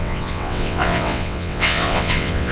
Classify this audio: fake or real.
fake